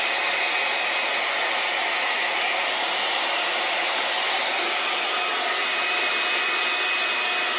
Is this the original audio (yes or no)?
yes